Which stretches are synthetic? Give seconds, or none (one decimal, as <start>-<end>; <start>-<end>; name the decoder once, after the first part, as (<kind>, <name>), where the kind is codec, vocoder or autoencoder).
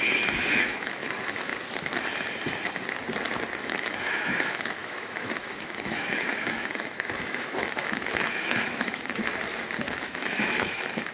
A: 0.0-1.5 (autoencoder, DAC-VAE); 3.6-9.3; 9.9-11.1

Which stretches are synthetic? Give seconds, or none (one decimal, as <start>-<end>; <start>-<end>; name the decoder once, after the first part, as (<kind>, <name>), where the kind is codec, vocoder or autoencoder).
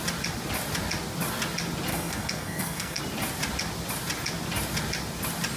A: 1.9-3.0 (codec, SNAC)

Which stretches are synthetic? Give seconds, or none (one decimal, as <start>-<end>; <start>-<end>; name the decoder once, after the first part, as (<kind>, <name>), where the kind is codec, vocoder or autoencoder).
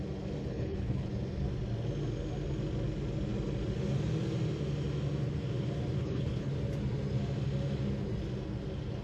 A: 0.4-1.1 (codec, HILCodec); 6.0-6.5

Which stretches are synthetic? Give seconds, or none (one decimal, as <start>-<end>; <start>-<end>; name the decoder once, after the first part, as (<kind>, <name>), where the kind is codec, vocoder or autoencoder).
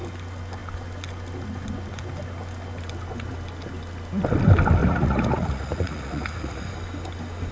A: 4.8-6.7 (vocoder, Vocos)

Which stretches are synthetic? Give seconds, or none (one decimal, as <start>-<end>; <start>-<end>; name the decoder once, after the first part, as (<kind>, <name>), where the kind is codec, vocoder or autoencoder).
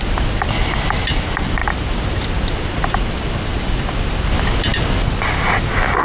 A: none